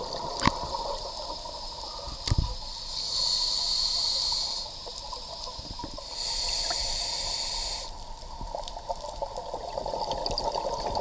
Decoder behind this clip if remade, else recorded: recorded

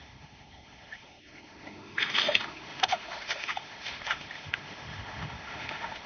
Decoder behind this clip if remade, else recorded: remade, autoencoder, DAC-VAE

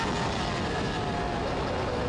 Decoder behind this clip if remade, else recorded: recorded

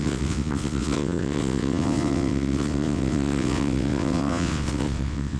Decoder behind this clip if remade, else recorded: remade, vocoder, WaveNeXt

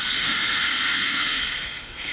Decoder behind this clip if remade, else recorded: remade, codec, SNAC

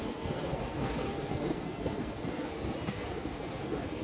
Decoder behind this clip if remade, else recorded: remade, codec, SNAC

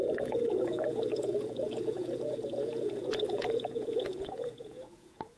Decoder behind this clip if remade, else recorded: remade, vocoder, Vocos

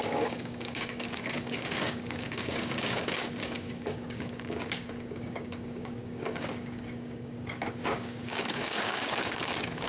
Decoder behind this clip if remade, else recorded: remade, codec, DAC